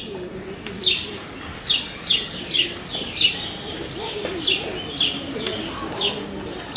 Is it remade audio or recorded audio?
recorded